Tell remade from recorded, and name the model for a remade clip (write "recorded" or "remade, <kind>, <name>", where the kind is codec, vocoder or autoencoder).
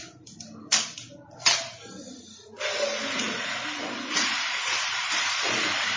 remade, vocoder, BigVGAN v2